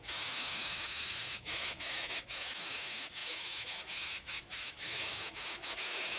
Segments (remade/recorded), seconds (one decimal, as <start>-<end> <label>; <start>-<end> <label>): 0.0-6.2 remade